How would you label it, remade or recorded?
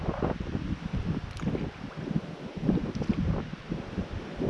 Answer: recorded